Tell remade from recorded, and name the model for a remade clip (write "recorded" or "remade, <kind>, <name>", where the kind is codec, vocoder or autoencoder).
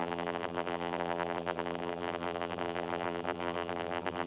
remade, vocoder, BigVGAN v2